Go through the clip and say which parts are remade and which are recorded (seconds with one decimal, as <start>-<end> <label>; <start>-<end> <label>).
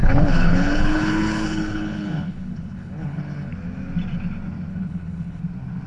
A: 0.0-3.5 remade; 3.5-4.7 recorded; 4.7-5.4 remade; 5.4-5.9 recorded